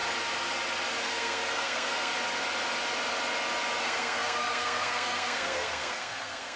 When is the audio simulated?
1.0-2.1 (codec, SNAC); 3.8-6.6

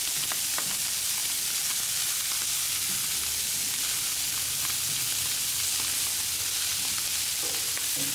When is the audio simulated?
none

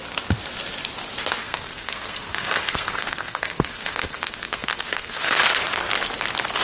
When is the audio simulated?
1.4-5.4 (codec, SNAC)

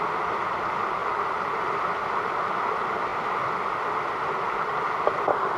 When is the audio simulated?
none